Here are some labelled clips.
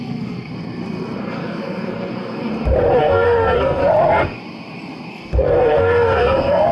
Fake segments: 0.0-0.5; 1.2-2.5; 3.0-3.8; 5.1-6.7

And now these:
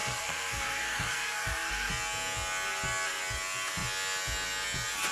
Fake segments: 0.0-1.9

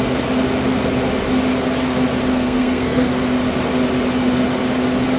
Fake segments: 2.3-3.1

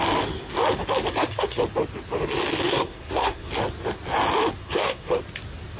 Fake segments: 1.1-1.6; 2.6-3.5; 4.6-5.2

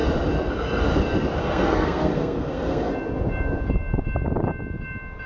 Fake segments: 1.4-2.9

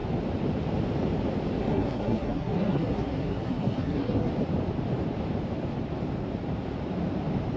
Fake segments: 1.6-4.3

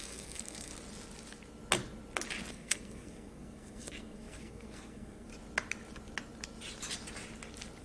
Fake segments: 0.0-0.7; 2.5-5.3

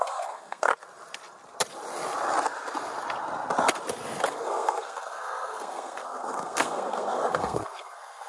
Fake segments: 0.0-0.7; 4.3-8.3